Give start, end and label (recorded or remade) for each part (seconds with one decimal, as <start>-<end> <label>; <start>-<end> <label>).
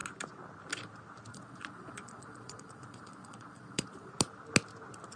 0.0-1.3 recorded; 1.3-4.1 remade; 4.1-5.2 recorded